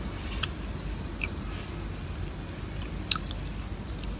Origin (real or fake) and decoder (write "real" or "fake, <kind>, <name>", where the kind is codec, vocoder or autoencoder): real